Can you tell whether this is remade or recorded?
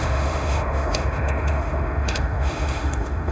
remade